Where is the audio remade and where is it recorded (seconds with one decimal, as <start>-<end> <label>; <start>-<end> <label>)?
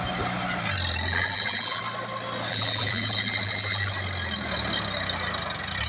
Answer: 0.0-1.1 recorded; 1.1-1.8 remade; 1.8-2.5 recorded; 2.5-3.9 remade; 3.9-5.9 recorded